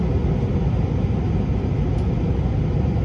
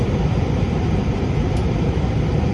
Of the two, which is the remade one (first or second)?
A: second